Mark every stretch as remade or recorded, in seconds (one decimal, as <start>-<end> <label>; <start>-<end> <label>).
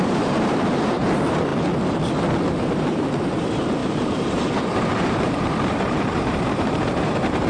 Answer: 0.0-1.5 remade; 1.5-2.2 recorded; 2.2-7.5 remade